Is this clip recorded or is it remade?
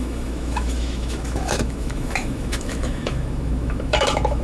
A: remade